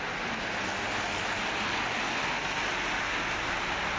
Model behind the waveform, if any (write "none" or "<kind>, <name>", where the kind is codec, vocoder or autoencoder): none